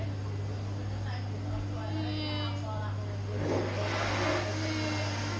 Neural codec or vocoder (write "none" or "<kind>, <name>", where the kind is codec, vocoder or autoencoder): none